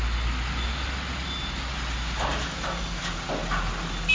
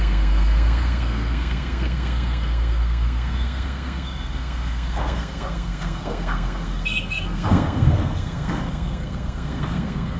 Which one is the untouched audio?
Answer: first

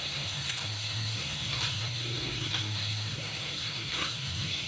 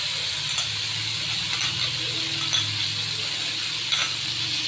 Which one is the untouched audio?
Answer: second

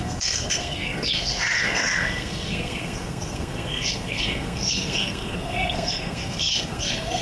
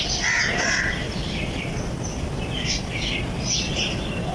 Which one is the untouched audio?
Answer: second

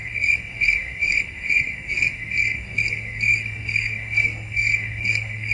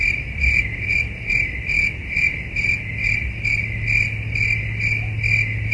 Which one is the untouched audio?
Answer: second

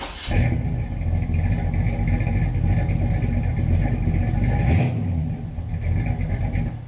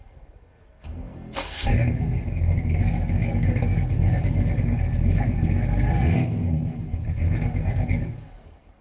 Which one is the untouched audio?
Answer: first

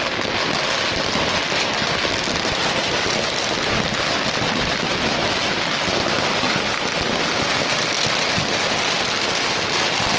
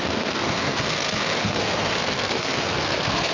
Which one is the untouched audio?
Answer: first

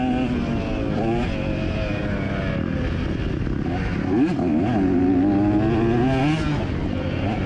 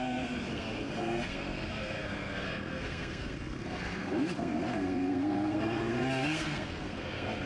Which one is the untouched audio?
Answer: first